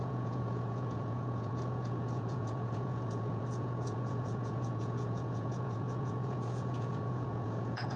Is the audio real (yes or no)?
no